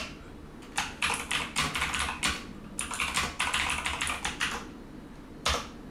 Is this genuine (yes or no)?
yes